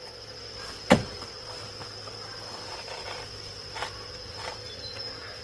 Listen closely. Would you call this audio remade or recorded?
recorded